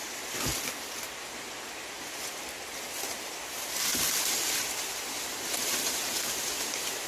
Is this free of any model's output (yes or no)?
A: yes